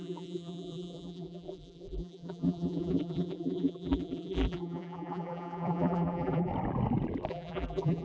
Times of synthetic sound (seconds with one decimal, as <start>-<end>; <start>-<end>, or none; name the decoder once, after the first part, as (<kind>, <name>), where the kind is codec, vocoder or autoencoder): 0.0-6.5 (vocoder, BigVGAN v2); 7.3-8.0